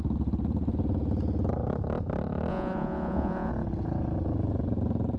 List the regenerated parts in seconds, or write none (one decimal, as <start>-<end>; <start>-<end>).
2.5-3.5